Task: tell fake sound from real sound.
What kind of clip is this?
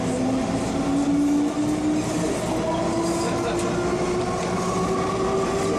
real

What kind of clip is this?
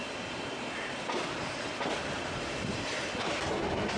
real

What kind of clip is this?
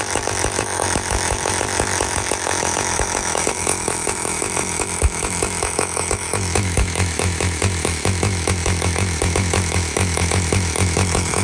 fake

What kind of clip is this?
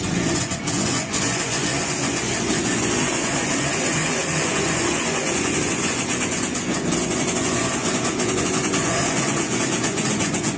fake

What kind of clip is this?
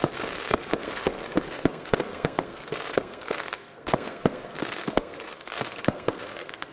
fake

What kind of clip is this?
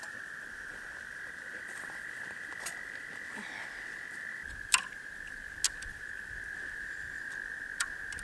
real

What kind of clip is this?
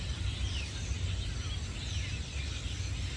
real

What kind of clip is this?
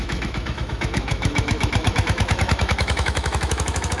fake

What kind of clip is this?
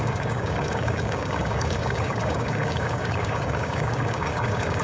fake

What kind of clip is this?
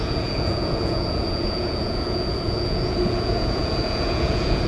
fake